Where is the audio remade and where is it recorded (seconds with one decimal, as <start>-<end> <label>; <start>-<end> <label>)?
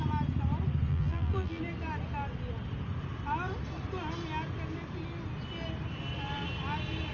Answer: 0.0-0.9 recorded; 0.9-1.6 remade; 1.6-7.1 recorded